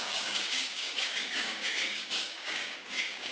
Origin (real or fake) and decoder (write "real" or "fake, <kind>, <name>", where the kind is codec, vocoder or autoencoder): fake, codec, DAC